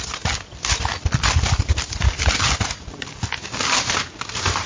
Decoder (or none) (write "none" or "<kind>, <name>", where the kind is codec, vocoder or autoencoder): none